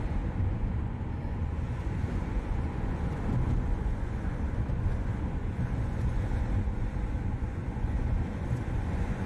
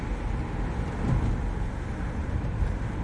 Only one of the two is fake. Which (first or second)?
first